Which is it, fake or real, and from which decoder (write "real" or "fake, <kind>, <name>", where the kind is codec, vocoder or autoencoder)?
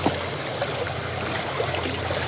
real